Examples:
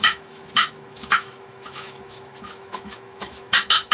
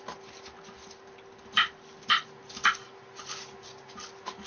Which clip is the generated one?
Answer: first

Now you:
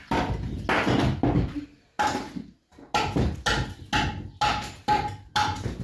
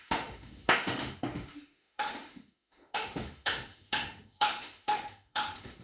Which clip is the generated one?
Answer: second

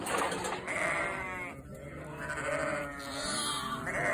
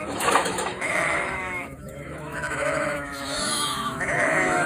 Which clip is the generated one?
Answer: second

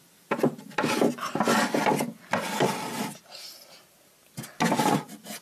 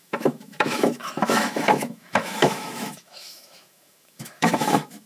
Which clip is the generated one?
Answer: second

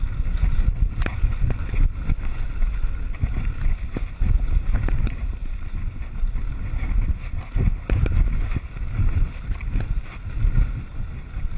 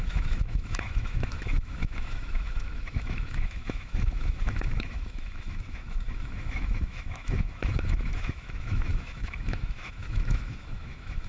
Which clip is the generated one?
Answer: second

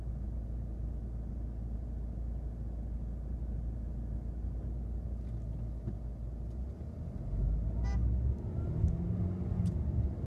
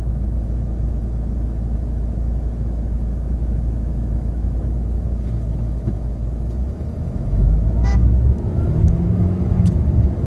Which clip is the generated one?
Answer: second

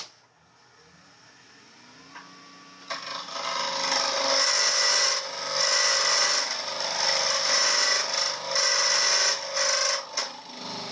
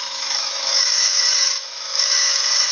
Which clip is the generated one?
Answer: second